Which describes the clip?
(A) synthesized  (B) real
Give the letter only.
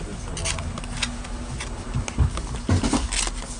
B